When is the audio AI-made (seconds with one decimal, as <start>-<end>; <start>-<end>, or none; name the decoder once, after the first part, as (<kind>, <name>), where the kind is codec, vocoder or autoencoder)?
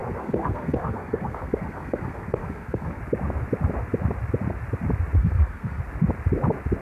0.0-3.0 (codec, SNAC); 5.2-5.8